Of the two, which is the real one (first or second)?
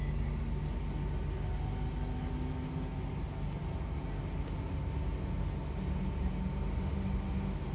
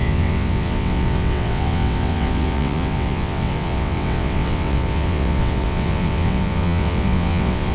first